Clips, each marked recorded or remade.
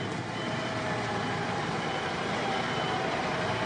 remade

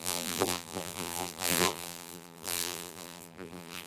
remade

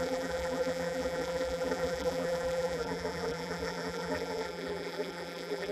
remade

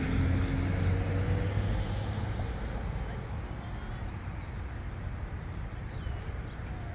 recorded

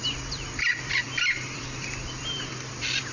remade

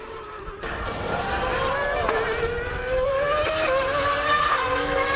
remade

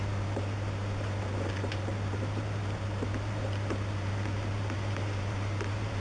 remade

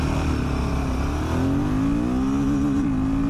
recorded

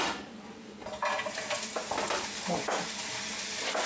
recorded